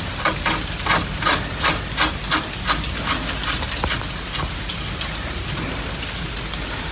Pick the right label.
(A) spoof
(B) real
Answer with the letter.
B